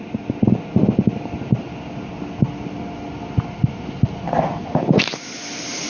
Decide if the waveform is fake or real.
real